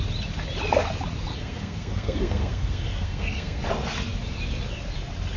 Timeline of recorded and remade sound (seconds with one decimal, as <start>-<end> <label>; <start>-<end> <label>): 0.0-1.3 recorded; 1.3-3.6 remade; 3.6-5.4 recorded